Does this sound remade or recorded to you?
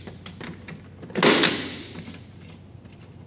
recorded